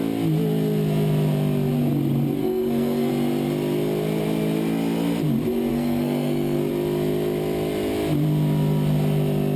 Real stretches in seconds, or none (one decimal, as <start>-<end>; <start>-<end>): 0.0-2.4; 3.1-5.7; 6.7-9.6